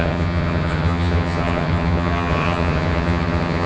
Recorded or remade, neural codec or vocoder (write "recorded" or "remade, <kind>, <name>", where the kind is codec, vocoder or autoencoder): remade, vocoder, HiFi-GAN